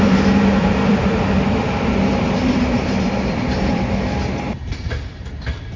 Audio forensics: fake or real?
fake